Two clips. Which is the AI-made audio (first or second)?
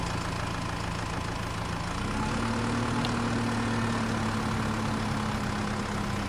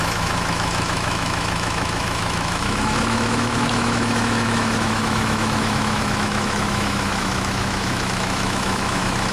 second